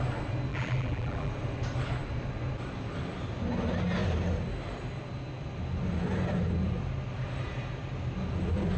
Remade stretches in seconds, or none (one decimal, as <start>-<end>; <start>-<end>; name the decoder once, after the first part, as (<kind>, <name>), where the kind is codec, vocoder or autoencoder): 0.5-1.3 (vocoder, BigVGAN v2)